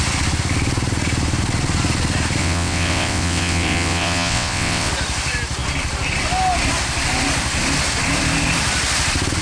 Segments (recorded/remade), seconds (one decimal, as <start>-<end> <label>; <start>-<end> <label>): 0.0-2.4 recorded; 2.4-4.9 remade; 4.9-9.4 recorded